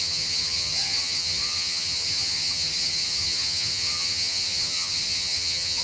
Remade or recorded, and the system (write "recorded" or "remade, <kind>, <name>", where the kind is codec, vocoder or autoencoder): remade, vocoder, HiFi-GAN